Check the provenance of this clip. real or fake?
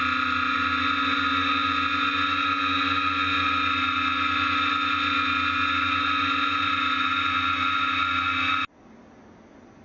real